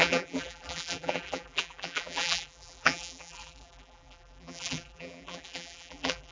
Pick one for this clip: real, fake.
fake